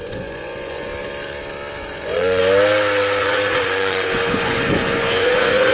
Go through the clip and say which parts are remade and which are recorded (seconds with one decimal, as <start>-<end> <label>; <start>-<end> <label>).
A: 0.0-0.9 remade; 0.9-1.8 recorded; 1.8-2.4 remade; 2.4-3.2 recorded; 3.2-5.7 remade